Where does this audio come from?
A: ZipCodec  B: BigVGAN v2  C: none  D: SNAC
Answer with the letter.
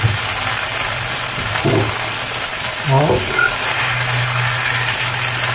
C